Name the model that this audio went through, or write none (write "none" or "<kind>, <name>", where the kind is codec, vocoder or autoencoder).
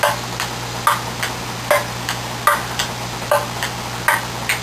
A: none